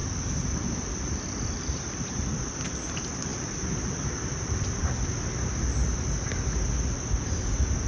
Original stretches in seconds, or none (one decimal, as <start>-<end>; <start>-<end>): 2.5-3.3; 4.8-7.9